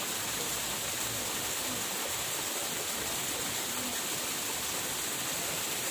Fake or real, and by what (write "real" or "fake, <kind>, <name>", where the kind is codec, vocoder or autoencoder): real